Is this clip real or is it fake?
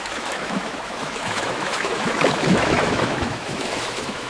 fake